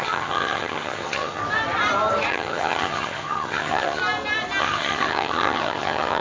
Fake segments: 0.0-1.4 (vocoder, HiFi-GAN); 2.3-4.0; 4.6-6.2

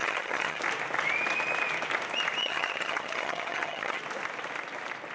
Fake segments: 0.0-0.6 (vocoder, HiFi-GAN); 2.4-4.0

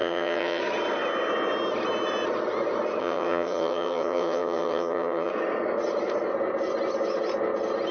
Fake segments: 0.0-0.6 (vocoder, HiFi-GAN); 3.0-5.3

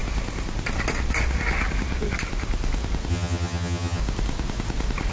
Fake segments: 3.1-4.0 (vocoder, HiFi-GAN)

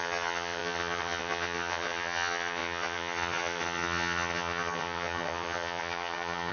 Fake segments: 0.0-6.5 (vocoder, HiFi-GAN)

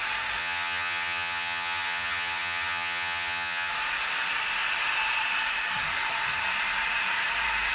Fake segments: 0.4-3.7 (vocoder, HiFi-GAN)

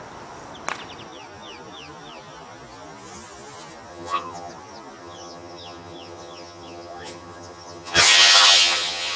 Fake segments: 3.9-4.5 (vocoder, HiFi-GAN); 5.0-9.2

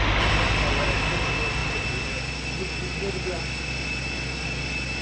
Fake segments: none